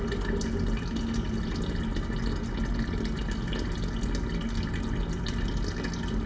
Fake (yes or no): no